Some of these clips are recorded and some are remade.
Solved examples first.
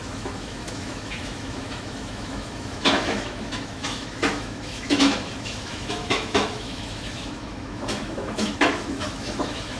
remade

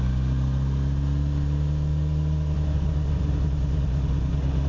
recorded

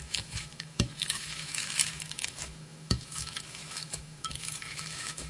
remade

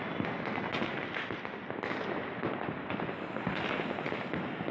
recorded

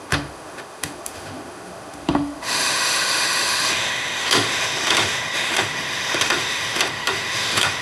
remade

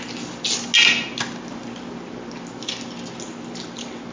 recorded